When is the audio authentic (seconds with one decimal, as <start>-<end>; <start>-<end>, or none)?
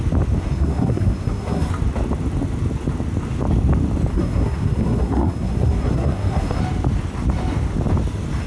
0.0-0.4; 1.7-4.1; 6.6-8.5